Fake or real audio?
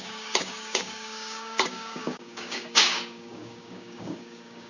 fake